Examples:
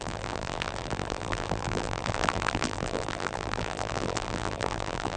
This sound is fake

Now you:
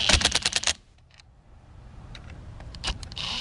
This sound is fake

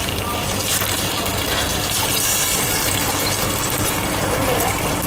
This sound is real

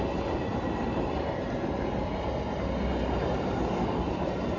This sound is real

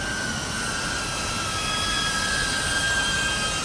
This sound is real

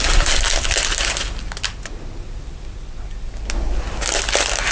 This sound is real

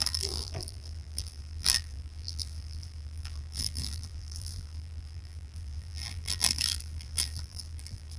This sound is fake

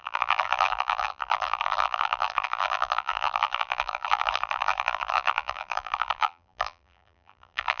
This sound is fake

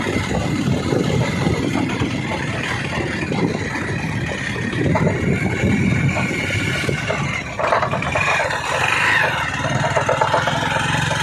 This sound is fake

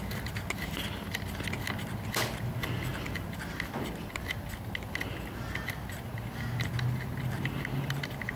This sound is real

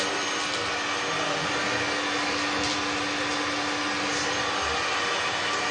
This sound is real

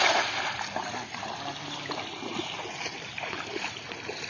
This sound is real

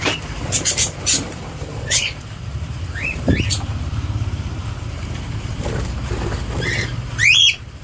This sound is fake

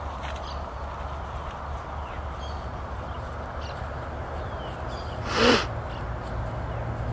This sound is real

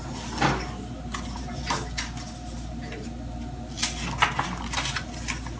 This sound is real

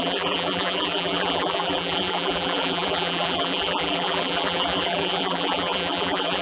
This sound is fake